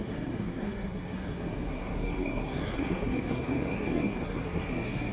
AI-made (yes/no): yes